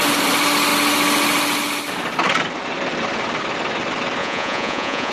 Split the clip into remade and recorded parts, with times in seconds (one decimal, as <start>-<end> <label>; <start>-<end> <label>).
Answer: 0.0-4.2 recorded; 4.2-5.1 remade